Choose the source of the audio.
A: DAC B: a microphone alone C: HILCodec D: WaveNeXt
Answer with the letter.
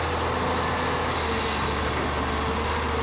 B